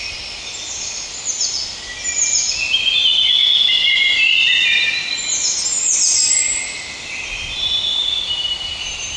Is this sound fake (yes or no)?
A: no